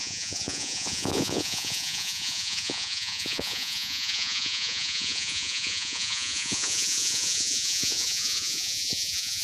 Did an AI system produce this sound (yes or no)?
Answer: yes